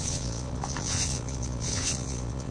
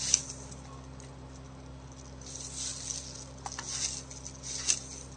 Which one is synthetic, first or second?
first